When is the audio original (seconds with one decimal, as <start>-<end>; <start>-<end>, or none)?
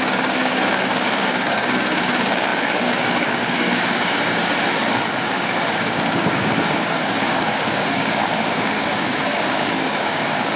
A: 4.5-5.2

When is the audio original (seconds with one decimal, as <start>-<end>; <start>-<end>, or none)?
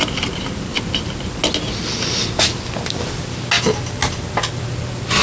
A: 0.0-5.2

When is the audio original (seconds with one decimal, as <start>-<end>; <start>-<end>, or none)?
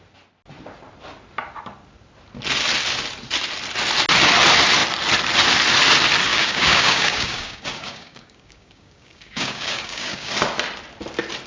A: 0.0-6.3; 10.3-11.5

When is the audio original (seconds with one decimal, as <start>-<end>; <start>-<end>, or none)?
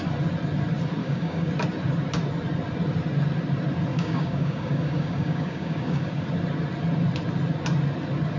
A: 0.0-1.0; 1.5-3.9; 6.3-8.4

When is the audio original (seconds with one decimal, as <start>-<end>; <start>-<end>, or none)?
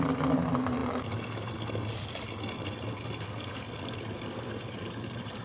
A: 0.0-5.4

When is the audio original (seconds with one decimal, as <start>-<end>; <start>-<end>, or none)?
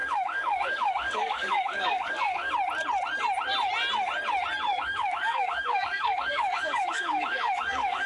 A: 2.5-4.7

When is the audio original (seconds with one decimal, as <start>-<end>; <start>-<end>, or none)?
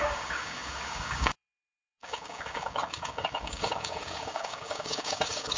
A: none